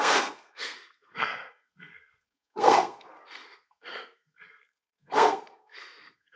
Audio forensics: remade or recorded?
remade